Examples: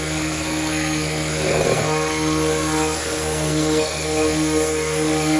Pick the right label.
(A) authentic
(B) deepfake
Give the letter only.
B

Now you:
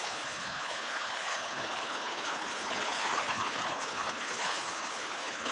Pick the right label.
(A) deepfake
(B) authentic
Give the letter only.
A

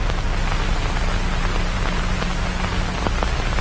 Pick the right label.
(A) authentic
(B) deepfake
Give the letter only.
A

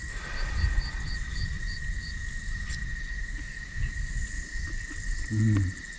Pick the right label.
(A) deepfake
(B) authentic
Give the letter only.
B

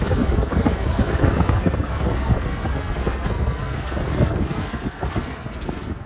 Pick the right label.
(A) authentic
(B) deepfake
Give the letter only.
B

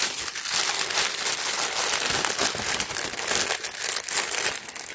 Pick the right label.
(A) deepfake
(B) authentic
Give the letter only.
B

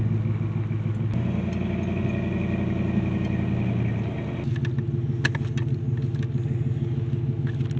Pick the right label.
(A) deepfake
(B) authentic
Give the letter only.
B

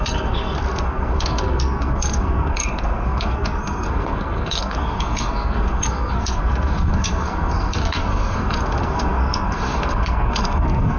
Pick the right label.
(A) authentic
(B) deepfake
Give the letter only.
B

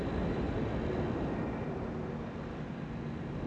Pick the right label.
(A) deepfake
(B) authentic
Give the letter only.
B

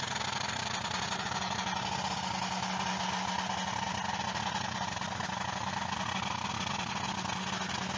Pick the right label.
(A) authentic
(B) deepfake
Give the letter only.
A